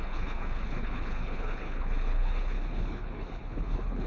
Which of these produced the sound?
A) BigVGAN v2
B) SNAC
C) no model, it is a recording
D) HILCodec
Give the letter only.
D